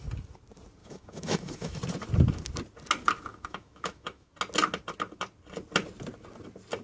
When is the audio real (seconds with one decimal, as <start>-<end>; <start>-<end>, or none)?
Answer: 0.0-0.8; 1.8-3.3; 4.3-6.8